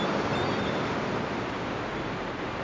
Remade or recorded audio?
recorded